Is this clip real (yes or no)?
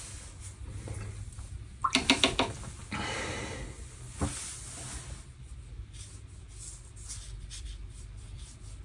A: yes